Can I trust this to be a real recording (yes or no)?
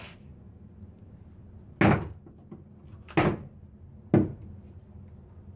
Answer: yes